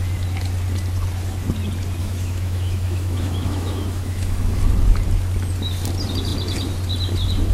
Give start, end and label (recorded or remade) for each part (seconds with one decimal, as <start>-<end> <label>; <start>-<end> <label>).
0.0-2.0 recorded; 2.0-4.6 remade; 4.6-7.5 recorded